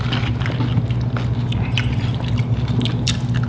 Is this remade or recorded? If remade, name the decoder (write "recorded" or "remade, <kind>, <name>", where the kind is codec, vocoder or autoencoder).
recorded